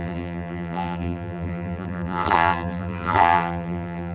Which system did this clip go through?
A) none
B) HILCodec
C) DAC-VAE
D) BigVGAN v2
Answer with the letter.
D